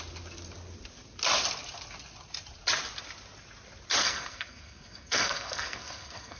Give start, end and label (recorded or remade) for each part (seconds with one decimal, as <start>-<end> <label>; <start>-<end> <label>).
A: 0.0-4.0 recorded; 4.0-6.4 remade